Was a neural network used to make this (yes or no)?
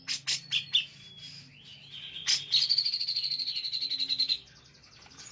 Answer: no